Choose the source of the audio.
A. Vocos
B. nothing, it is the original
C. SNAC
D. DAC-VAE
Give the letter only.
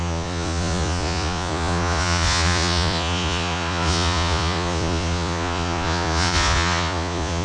A